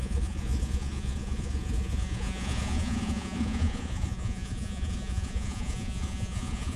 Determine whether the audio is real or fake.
fake